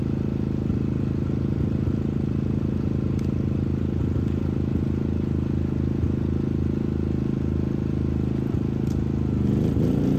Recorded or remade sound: recorded